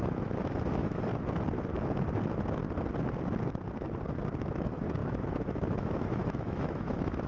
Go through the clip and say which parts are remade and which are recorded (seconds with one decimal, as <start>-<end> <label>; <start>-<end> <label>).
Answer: 0.0-1.1 remade; 1.1-4.4 recorded; 4.4-7.3 remade